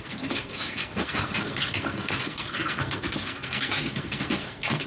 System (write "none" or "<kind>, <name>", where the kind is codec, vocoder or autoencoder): codec, SNAC